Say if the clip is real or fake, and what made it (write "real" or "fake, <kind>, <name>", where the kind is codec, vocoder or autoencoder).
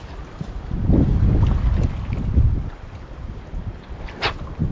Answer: real